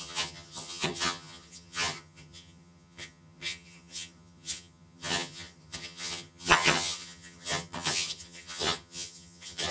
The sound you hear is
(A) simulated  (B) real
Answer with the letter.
A